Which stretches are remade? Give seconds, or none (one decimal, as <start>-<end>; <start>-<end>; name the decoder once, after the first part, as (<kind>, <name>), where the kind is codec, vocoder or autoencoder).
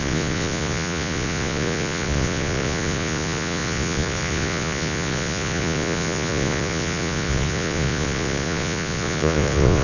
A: 0.0-9.8 (vocoder, Vocos)